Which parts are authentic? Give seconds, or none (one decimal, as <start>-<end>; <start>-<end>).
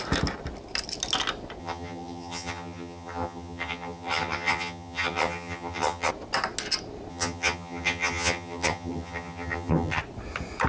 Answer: 0.0-1.6; 6.1-7.1; 10.0-10.7